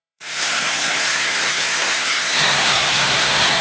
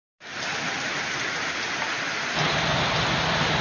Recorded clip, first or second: second